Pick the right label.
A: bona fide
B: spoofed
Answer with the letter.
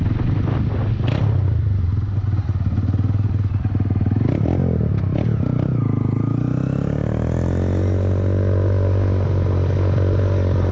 A